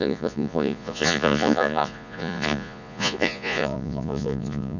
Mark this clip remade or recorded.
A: remade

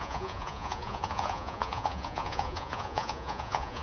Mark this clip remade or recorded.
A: remade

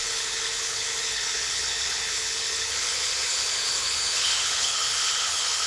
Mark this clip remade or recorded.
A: remade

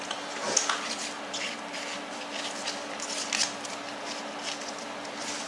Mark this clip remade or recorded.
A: recorded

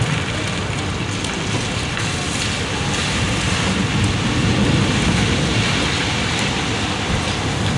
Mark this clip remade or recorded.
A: recorded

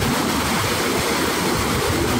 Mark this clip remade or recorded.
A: remade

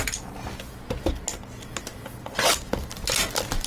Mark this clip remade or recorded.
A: recorded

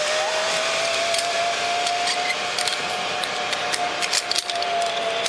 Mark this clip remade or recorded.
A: recorded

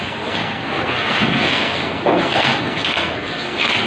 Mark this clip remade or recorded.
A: remade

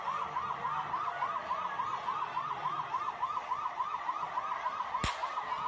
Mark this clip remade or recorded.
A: recorded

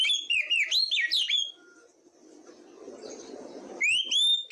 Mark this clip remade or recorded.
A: recorded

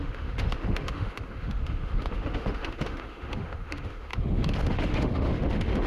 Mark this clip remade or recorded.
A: remade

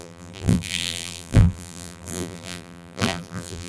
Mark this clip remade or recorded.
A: remade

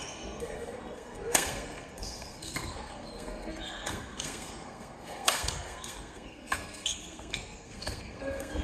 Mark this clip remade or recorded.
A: remade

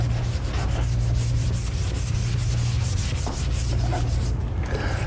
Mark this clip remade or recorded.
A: recorded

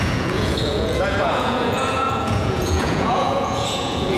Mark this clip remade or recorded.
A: remade